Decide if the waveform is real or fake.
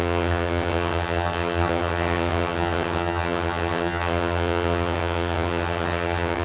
fake